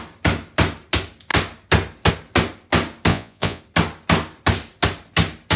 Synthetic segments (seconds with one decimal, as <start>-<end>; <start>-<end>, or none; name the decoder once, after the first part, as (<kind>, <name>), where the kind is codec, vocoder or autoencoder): 3.1-3.6 (vocoder, Vocos)